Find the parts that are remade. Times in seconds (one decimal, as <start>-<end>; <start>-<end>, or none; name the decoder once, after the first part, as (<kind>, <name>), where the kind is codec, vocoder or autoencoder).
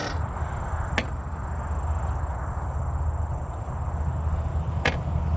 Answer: none